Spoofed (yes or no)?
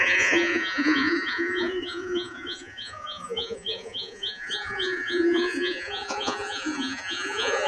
yes